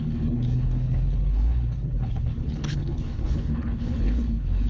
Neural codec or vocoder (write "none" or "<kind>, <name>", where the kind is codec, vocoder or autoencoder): codec, HILCodec